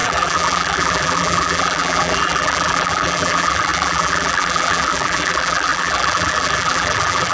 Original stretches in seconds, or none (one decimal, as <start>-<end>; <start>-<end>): none